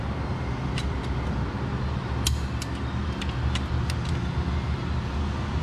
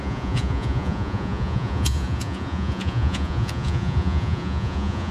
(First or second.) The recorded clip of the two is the first